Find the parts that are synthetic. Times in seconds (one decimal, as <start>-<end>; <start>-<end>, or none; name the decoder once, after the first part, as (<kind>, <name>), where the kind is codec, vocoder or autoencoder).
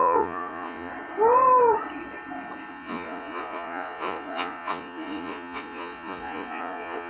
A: 0.0-0.9 (vocoder, Vocos); 2.7-7.1